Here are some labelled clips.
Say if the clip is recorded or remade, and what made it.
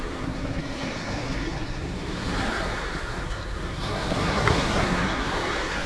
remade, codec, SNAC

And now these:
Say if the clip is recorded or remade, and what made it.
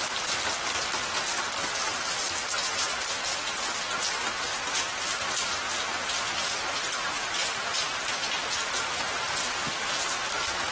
recorded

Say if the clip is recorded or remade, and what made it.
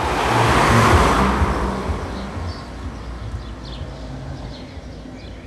recorded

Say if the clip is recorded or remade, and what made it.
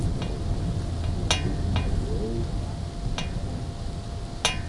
recorded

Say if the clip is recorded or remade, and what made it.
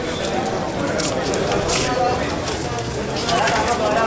recorded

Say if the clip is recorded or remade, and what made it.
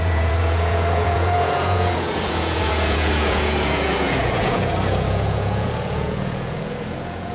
remade, vocoder, Vocos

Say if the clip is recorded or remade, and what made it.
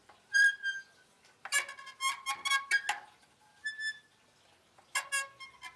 recorded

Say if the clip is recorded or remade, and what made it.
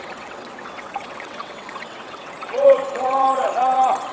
remade, vocoder, WaveNeXt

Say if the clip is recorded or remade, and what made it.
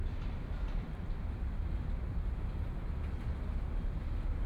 remade, vocoder, BigVGAN v2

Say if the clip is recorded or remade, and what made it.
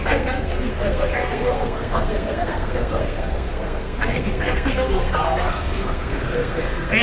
remade, codec, SNAC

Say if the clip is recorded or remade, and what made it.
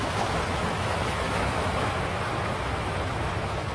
remade, autoencoder, DAC-VAE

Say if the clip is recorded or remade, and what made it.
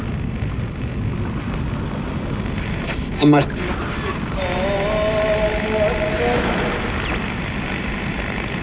recorded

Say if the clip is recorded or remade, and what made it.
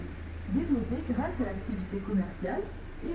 recorded